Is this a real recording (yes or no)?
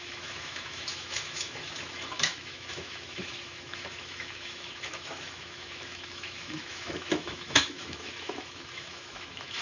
no